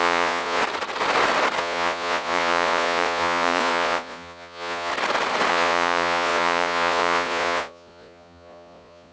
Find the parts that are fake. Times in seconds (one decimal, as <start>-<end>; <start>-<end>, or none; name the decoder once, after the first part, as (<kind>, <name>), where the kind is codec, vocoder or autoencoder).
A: 0.0-0.6 (vocoder, Vocos); 1.6-4.9; 5.5-9.1